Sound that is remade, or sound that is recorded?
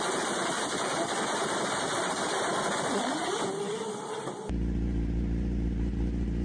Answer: remade